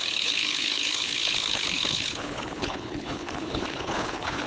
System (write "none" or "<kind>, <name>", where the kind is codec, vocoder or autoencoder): codec, HILCodec